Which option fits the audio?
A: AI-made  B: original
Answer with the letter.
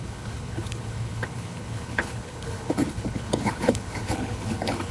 A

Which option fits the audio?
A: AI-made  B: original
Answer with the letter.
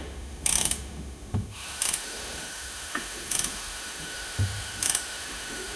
A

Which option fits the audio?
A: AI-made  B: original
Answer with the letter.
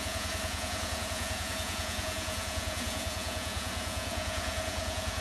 A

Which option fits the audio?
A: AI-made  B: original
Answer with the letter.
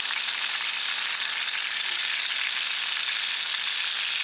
B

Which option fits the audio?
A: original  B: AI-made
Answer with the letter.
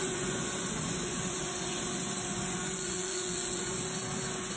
B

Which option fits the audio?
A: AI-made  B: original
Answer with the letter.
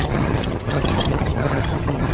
A